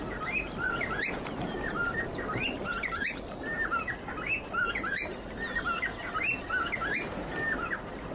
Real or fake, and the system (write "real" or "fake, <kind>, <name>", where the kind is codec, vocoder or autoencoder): real